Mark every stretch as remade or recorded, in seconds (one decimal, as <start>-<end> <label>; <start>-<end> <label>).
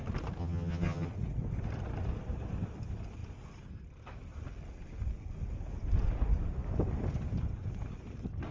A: 0.0-0.4 recorded; 0.4-1.1 remade; 1.1-8.5 recorded